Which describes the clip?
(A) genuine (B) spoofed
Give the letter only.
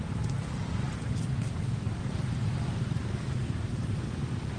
A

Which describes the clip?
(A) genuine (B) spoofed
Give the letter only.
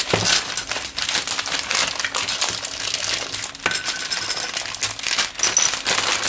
A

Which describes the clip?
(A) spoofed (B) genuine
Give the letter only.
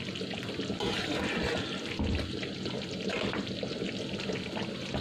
B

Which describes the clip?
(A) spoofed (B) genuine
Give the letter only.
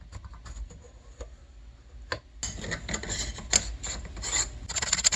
B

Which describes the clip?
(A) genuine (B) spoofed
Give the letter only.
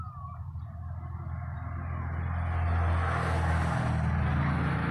A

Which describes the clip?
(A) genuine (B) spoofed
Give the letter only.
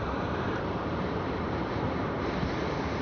B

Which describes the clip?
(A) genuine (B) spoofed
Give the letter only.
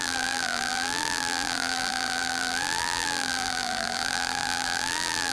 B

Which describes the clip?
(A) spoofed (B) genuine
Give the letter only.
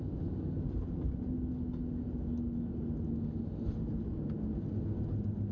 B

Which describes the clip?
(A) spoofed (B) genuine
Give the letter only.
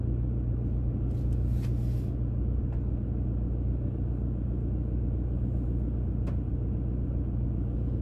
B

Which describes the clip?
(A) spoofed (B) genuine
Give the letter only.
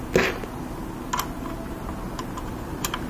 B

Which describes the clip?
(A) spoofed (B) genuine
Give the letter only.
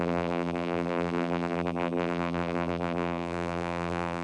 A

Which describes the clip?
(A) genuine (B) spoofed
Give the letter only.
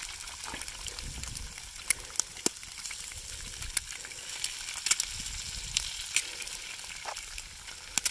A